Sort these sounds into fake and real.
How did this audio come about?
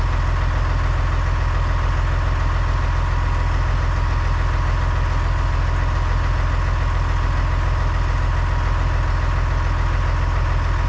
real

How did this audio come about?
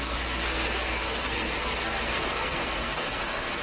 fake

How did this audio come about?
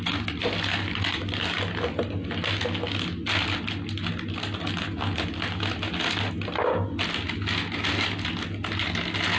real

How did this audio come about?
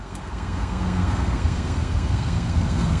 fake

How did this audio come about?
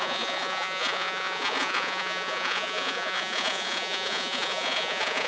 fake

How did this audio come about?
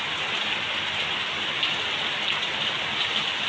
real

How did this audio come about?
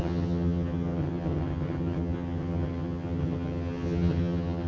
fake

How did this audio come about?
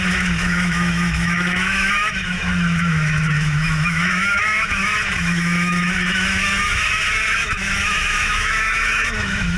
fake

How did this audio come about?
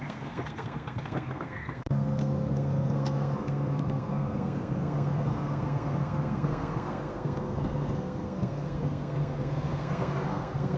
fake